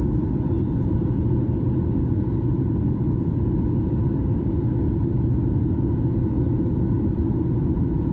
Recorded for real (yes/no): yes